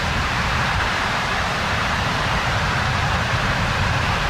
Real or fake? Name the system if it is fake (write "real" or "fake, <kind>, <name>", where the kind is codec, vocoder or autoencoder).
fake, vocoder, BigVGAN v2